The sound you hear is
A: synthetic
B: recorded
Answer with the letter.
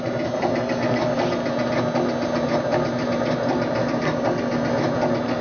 B